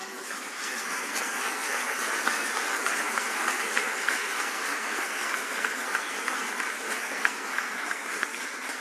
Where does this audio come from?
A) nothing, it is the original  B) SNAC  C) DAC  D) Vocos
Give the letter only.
B